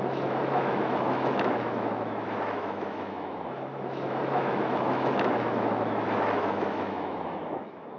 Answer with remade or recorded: remade